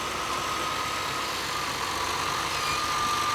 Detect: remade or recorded recorded